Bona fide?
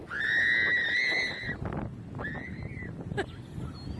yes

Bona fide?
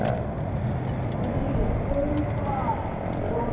yes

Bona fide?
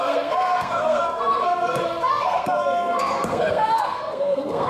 no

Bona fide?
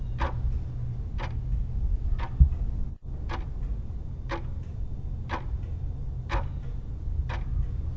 yes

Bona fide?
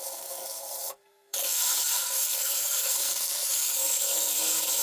no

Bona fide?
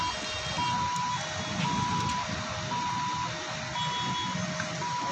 yes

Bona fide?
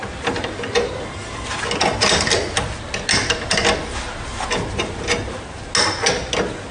yes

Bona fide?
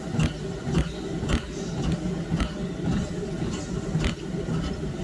yes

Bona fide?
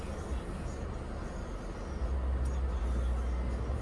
yes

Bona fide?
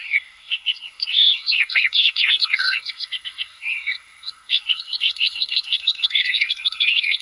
no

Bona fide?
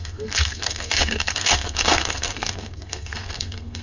no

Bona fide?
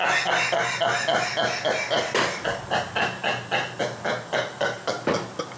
yes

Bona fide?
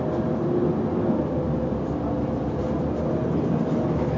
yes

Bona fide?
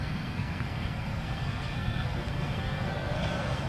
no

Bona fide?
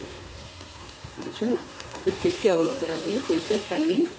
no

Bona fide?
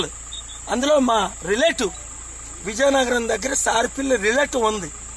yes